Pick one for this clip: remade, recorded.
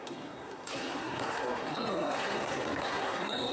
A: remade